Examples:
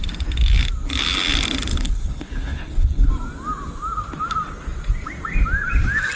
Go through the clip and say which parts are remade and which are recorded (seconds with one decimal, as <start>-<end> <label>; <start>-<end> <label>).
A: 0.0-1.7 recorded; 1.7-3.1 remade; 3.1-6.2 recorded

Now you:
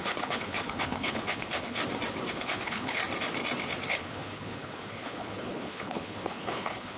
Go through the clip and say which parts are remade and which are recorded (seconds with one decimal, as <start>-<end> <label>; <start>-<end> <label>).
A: 0.0-1.8 remade; 1.8-2.3 recorded; 2.3-3.0 remade; 3.0-3.9 recorded; 3.9-7.0 remade

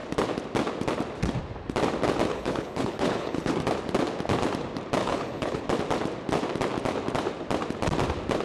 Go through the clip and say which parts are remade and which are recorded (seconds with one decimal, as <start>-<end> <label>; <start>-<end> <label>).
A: 0.0-2.3 recorded; 2.3-3.5 remade; 3.5-5.0 recorded; 5.0-5.6 remade; 5.6-8.4 recorded

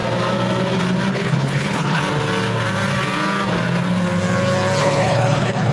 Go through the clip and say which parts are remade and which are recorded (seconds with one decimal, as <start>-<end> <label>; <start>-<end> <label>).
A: 0.0-1.1 recorded; 1.1-2.0 remade; 2.0-4.8 recorded; 4.8-5.7 remade

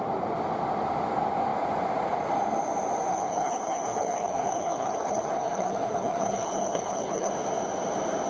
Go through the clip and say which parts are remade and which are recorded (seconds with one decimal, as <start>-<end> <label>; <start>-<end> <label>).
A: 0.0-3.1 recorded; 3.1-7.3 remade; 7.3-8.3 recorded

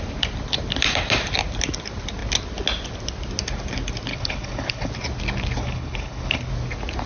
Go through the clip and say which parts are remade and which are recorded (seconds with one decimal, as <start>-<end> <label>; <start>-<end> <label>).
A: 0.0-4.1 recorded; 4.1-4.9 remade; 4.9-5.6 recorded; 5.6-6.5 remade; 6.5-7.1 recorded